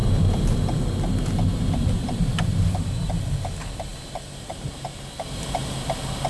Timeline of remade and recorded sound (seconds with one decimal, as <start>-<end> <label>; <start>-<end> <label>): 0.0-6.3 recorded